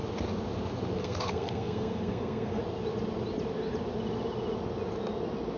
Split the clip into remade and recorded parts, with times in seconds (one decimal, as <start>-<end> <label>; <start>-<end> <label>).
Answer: 0.0-1.0 recorded; 1.0-2.6 remade; 2.6-5.6 recorded